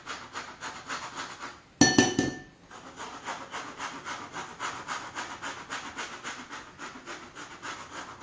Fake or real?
real